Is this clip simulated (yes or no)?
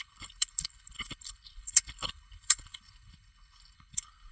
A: yes